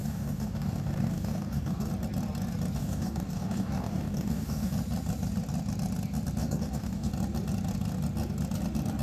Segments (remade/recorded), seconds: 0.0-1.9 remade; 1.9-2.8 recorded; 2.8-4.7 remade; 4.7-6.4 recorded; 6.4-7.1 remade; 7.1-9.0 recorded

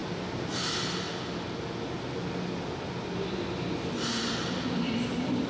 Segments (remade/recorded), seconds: 0.0-1.1 remade; 1.1-4.4 recorded; 4.4-5.5 remade

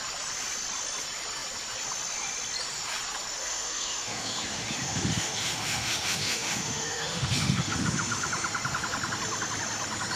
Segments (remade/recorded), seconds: 0.0-3.4 recorded; 3.4-8.3 remade; 8.3-10.2 recorded

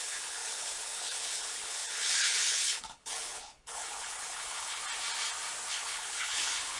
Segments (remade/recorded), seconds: 0.0-4.8 remade; 4.8-5.7 recorded; 5.7-6.8 remade

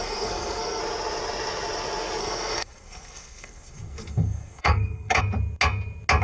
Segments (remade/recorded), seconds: 0.0-0.8 remade; 0.8-2.2 recorded; 2.2-5.2 remade; 5.2-6.2 recorded

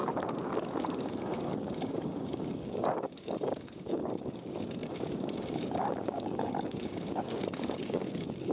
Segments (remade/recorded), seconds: 0.0-8.5 remade

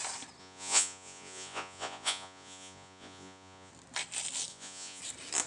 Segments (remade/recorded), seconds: 0.0-0.4 recorded; 0.4-3.7 remade; 3.7-4.5 recorded; 4.5-5.0 remade; 5.0-5.5 recorded